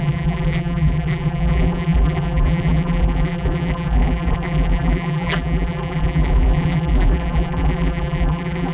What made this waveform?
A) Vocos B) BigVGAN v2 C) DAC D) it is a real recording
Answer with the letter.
B